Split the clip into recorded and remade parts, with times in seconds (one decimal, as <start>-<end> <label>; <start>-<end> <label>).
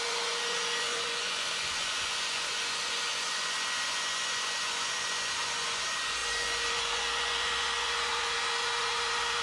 0.0-9.4 remade